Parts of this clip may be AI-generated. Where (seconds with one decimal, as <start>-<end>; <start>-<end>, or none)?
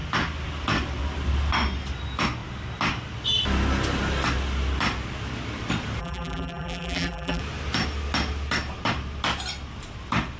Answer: 6.0-7.4